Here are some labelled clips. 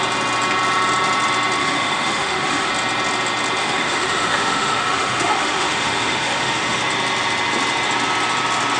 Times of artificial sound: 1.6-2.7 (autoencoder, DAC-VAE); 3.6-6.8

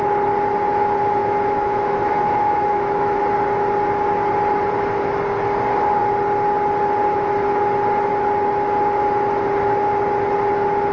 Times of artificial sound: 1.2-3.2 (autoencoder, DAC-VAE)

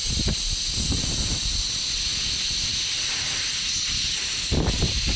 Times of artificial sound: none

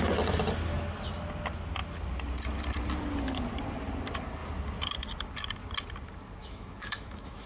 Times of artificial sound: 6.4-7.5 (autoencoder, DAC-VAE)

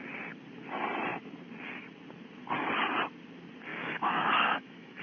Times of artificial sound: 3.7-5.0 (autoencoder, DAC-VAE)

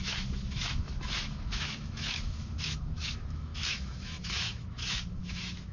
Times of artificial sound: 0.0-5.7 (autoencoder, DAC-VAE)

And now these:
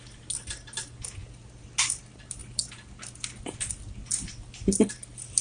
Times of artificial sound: none